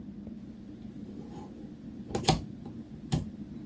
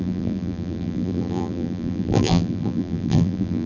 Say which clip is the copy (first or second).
second